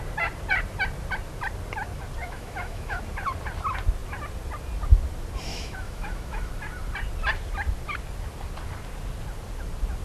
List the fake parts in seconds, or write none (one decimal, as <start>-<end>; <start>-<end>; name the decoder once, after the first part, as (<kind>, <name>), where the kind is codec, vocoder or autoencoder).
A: 2.2-3.0 (autoencoder, DAC-VAE); 5.5-6.5